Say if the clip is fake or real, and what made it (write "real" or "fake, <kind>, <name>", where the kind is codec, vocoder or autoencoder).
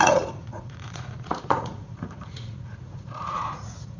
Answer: fake, vocoder, Vocos